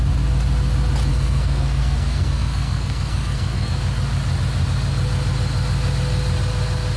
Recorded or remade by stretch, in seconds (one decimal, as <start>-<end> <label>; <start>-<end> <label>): 0.0-1.1 recorded; 1.1-3.7 remade; 3.7-7.0 recorded